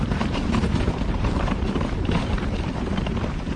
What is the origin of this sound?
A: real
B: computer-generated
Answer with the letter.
B